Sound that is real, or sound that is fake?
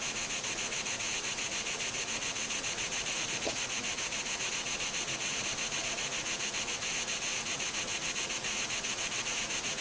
fake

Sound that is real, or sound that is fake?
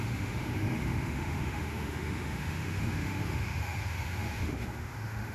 fake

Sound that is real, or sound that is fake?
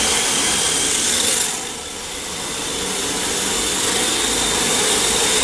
real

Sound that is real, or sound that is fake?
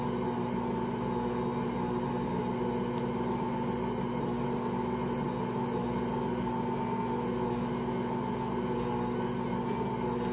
real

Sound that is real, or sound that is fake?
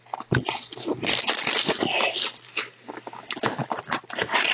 real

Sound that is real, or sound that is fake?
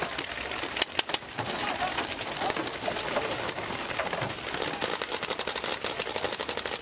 real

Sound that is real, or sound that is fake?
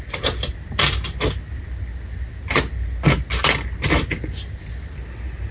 real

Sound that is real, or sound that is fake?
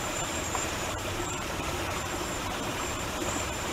fake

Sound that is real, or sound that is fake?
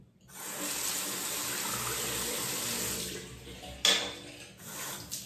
real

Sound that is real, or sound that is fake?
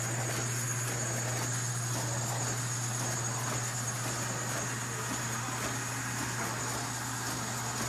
real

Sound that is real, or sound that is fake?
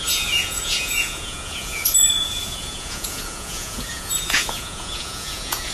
fake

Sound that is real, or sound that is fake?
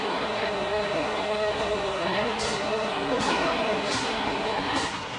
fake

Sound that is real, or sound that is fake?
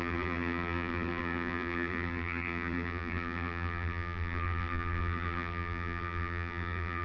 fake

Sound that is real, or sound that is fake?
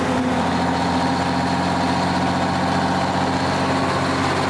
real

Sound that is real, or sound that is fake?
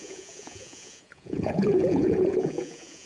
fake